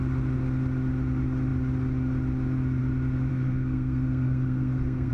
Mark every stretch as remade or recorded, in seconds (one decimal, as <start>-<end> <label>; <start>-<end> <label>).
0.0-3.3 recorded; 3.3-5.1 remade